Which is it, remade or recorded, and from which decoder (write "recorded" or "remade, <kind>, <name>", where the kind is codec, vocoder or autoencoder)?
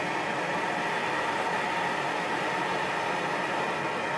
recorded